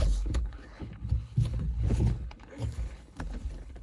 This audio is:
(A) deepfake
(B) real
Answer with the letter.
A